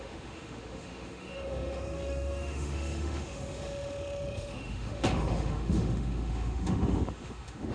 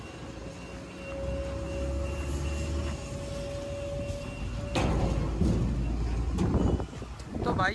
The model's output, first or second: first